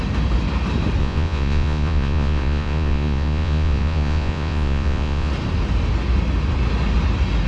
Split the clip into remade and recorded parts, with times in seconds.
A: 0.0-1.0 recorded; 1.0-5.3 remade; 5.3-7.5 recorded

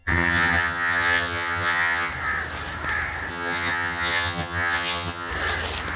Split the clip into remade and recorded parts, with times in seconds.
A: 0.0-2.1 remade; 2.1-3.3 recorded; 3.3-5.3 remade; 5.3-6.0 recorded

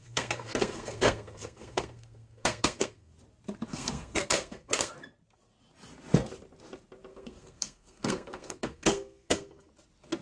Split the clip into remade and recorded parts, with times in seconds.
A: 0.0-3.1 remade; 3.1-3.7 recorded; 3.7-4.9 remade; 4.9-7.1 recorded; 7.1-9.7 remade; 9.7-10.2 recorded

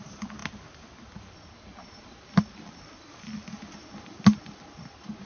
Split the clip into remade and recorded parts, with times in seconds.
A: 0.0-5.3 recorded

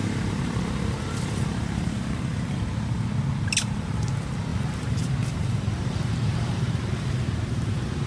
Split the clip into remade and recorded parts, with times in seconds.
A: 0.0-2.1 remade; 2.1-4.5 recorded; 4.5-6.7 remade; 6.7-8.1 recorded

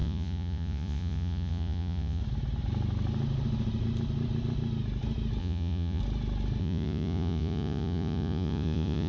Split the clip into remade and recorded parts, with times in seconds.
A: 0.0-2.2 remade; 2.2-5.4 recorded; 5.4-6.0 remade; 6.0-6.6 recorded; 6.6-9.1 remade